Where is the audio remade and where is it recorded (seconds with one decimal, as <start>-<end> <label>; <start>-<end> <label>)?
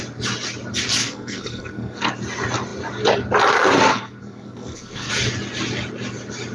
0.0-1.0 recorded; 1.0-2.1 remade; 2.1-3.9 recorded; 3.9-5.1 remade; 5.1-6.5 recorded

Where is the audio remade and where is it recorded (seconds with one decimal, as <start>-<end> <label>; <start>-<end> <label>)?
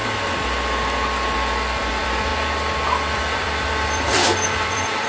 0.0-1.9 recorded; 1.9-2.3 remade; 2.3-3.1 recorded; 3.1-5.1 remade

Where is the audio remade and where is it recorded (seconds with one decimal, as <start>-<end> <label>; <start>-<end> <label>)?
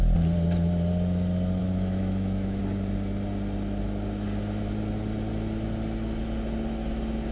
0.0-1.6 recorded; 1.6-2.6 remade; 2.6-7.3 recorded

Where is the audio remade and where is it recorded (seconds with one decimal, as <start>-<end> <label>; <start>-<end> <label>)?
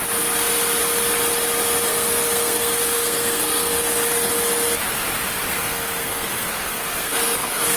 0.0-1.9 recorded; 1.9-4.3 remade; 4.3-5.5 recorded; 5.5-7.8 remade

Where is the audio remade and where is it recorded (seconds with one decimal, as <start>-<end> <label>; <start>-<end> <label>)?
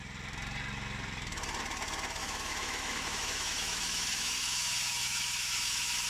0.0-2.2 recorded; 2.2-6.1 remade